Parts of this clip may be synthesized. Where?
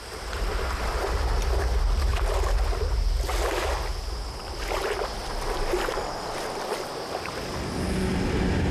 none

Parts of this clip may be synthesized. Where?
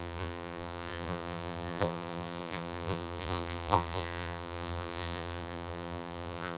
0.0-6.6 (vocoder, BigVGAN v2)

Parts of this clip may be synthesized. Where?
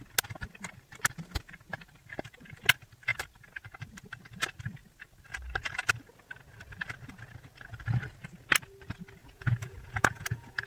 9.2-10.7 (vocoder, Vocos)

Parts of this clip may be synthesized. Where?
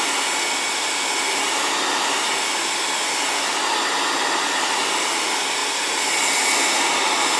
none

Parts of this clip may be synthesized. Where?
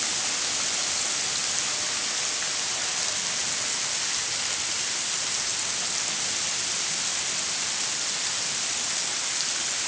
none